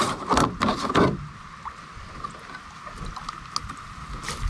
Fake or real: real